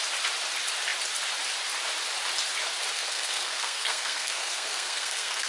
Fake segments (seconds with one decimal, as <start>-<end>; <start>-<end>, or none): 2.9-5.5